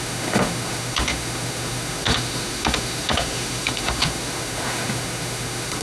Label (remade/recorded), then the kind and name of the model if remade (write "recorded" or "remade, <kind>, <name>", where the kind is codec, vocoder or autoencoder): remade, autoencoder, DAC-VAE